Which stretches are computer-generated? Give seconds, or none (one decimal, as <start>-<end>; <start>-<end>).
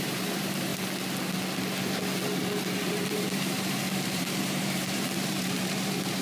0.0-0.7; 2.8-6.2